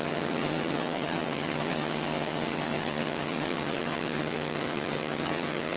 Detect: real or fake fake